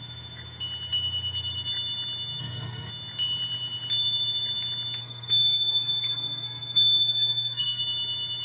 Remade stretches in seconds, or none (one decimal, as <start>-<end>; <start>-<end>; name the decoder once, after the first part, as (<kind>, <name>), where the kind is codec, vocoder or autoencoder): 2.4-2.9 (codec, SNAC); 5.0-7.8